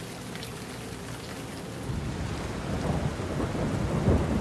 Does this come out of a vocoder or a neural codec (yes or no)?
no